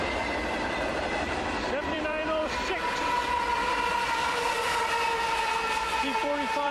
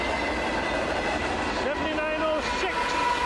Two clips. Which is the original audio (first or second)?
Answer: second